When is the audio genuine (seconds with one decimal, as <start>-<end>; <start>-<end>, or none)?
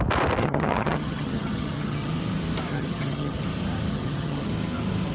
0.0-0.4; 2.1-2.7; 3.4-3.9; 4.5-5.1